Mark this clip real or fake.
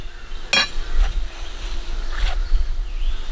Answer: real